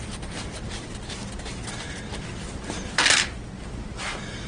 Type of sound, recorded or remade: recorded